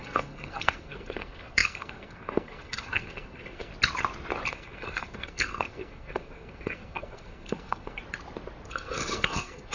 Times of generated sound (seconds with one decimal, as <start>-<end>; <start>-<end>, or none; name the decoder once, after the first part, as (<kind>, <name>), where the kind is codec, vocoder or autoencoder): 0.0-3.7 (codec, SNAC); 4.5-8.0; 8.7-9.7